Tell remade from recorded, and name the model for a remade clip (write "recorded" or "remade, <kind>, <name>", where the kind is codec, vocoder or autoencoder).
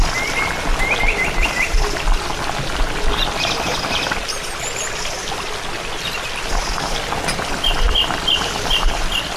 recorded